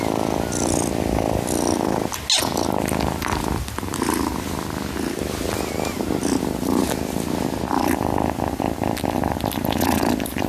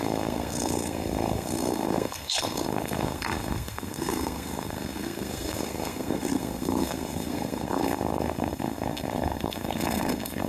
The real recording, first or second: first